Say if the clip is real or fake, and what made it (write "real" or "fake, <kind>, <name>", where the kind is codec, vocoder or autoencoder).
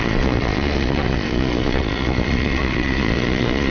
fake, vocoder, Vocos